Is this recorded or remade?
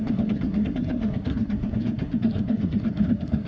remade